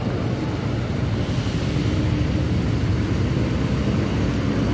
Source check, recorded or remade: recorded